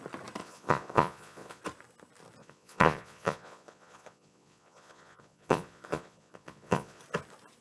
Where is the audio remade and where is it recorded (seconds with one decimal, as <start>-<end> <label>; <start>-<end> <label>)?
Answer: 0.0-0.4 recorded; 0.4-1.6 remade; 1.6-2.4 recorded; 2.4-7.0 remade; 7.0-7.6 recorded